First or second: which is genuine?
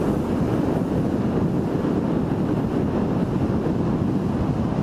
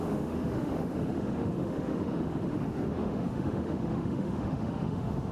first